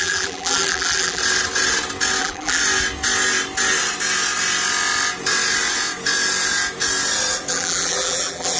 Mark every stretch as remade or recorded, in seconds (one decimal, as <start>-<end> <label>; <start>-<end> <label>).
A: 0.0-1.2 remade; 1.2-2.2 recorded; 2.2-2.6 remade; 2.6-7.5 recorded; 7.5-8.6 remade